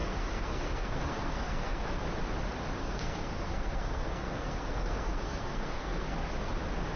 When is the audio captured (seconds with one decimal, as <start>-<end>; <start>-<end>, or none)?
2.0-2.8; 6.5-7.0